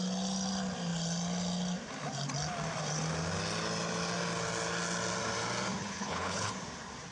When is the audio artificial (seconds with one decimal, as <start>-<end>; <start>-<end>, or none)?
5.8-6.5